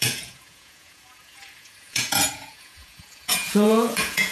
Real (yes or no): no